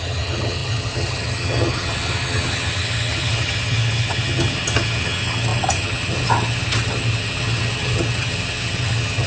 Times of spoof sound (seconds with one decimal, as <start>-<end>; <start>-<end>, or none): 0.0-9.3